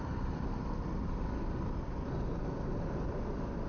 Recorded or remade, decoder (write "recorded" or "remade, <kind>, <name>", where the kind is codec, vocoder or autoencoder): recorded